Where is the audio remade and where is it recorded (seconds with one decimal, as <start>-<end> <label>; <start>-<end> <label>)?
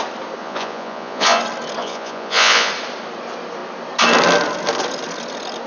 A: 0.0-0.4 recorded; 0.4-1.4 remade; 1.4-1.8 recorded; 1.8-2.7 remade; 2.7-5.7 recorded